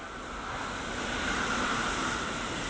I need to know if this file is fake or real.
real